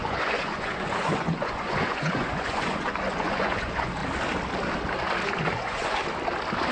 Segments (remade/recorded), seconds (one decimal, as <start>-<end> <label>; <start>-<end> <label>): 0.0-4.0 remade; 4.0-5.4 recorded; 5.4-6.0 remade; 6.0-6.7 recorded